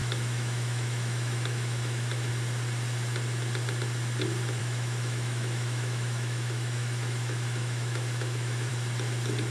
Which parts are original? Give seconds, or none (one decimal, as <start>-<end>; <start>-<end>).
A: 2.3-4.6; 8.7-9.5